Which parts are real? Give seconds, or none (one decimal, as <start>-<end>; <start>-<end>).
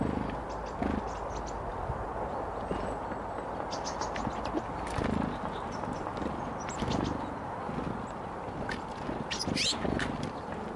0.0-10.8